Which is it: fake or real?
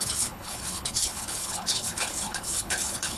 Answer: fake